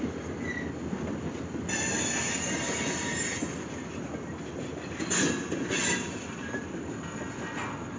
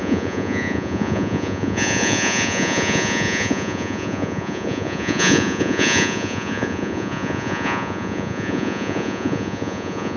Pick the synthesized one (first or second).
second